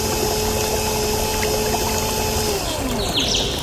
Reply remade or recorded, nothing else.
recorded